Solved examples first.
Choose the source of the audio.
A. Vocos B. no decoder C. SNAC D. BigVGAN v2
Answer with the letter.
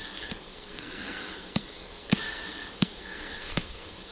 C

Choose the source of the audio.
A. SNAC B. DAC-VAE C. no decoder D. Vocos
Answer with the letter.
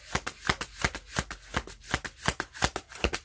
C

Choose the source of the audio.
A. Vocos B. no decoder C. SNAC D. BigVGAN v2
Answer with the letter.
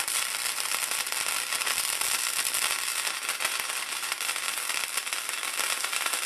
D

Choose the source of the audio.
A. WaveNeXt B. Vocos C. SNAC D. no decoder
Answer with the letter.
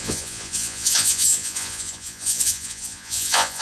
B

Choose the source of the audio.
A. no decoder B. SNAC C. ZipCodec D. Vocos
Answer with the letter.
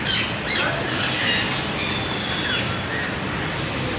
A